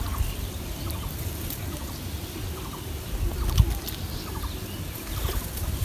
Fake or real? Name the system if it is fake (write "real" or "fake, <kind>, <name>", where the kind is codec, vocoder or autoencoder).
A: real